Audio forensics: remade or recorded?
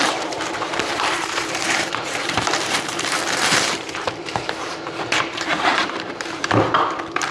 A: remade